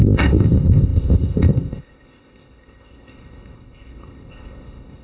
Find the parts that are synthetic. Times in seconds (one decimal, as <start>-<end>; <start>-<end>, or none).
0.0-5.0